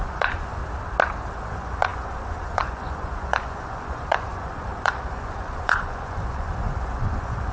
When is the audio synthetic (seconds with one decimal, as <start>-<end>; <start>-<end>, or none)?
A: 0.0-0.6; 1.3-7.5